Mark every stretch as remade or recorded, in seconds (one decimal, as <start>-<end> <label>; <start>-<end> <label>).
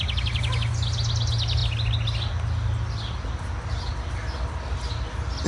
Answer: 0.0-5.5 recorded